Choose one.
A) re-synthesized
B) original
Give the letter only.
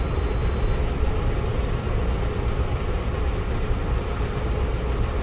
B